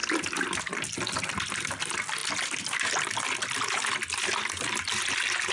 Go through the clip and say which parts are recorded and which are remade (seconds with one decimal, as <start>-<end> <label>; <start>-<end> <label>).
0.0-5.5 recorded